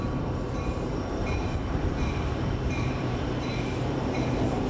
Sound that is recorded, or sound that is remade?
remade